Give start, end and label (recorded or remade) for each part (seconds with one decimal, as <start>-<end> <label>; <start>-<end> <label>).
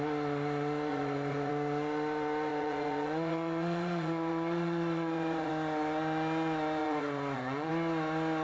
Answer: 0.0-0.9 recorded; 0.9-1.5 remade; 1.5-2.5 recorded; 2.5-5.5 remade; 5.5-6.8 recorded; 6.8-7.7 remade; 7.7-8.4 recorded